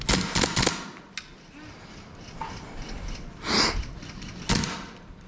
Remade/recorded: recorded